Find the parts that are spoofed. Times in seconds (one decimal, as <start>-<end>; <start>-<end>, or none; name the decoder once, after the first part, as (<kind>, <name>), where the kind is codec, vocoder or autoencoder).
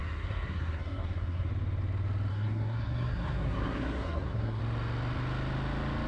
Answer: 0.0-1.5 (codec, SNAC); 2.3-4.6